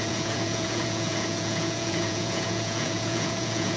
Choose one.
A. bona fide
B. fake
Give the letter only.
B